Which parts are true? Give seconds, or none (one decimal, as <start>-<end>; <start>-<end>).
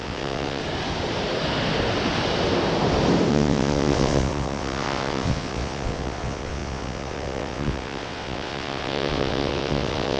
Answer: 0.6-3.3